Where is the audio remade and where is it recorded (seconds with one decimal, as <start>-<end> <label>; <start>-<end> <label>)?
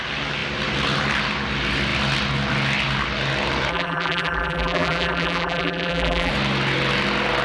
0.0-3.7 recorded; 3.7-6.3 remade; 6.3-7.4 recorded